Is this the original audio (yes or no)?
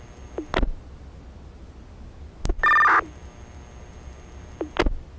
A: yes